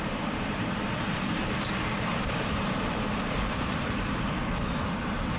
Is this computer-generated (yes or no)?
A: yes